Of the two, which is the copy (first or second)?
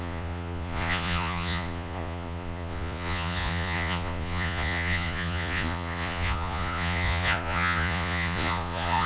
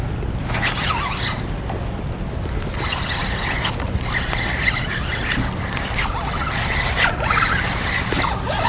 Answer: first